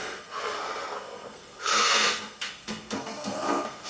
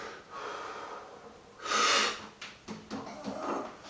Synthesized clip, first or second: first